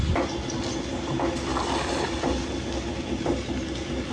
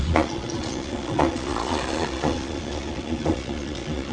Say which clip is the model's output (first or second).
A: second